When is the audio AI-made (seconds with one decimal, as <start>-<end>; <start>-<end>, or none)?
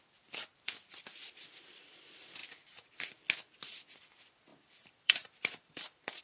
2.4-3.1; 4.5-6.2